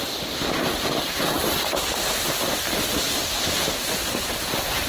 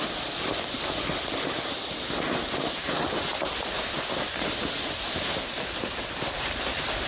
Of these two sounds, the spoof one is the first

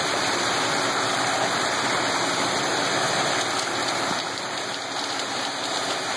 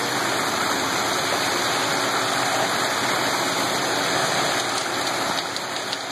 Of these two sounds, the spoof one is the first